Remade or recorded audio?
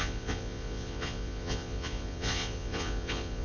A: remade